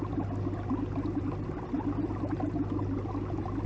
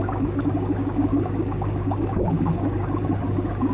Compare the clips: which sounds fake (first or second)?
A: second